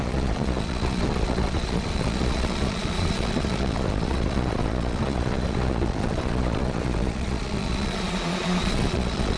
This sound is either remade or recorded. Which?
remade